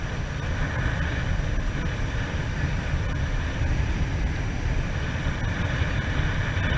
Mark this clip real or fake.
real